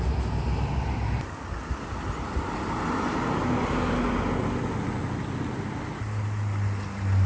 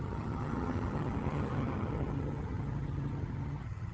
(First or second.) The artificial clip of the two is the second